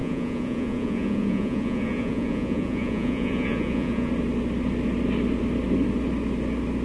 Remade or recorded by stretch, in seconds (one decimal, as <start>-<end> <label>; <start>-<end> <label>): 0.0-4.1 remade; 4.1-6.8 recorded